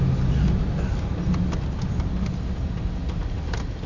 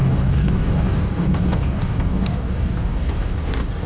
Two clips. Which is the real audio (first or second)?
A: first